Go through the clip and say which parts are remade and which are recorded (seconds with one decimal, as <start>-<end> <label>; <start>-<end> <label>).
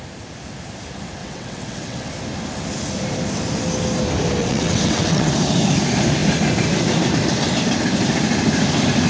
0.0-1.2 recorded; 1.2-2.1 remade; 2.1-4.4 recorded; 4.4-5.3 remade; 5.3-9.1 recorded